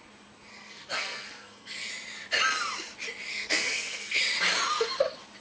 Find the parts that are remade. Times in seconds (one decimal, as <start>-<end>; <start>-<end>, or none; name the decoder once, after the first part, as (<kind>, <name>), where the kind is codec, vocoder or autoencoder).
0.5-1.9 (codec, SNAC); 3.3-4.2